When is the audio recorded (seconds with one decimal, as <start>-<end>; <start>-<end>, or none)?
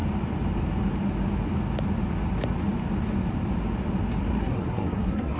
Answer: 0.0-4.3